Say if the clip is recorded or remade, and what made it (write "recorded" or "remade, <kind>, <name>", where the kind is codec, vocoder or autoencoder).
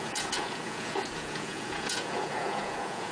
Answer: remade, vocoder, Vocos